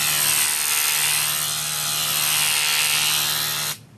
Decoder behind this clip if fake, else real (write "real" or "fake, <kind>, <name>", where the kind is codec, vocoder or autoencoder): real